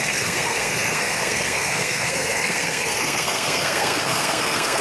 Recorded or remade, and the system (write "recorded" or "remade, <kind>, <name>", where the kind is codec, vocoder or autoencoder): remade, codec, SNAC